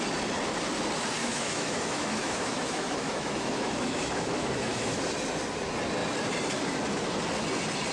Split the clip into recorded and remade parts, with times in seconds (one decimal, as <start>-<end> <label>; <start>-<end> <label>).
0.0-1.2 recorded; 1.2-5.0 remade; 5.0-7.9 recorded